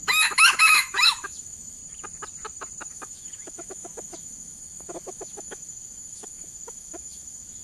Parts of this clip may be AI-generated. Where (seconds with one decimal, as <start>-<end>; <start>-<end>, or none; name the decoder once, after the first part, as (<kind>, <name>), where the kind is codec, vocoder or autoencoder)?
0.0-1.8 (autoencoder, DAC-VAE); 2.9-7.6